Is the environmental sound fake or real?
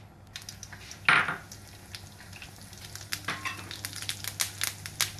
real